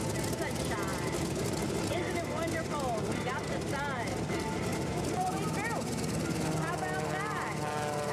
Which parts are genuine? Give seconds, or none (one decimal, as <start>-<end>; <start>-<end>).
0.0-4.7; 5.3-8.1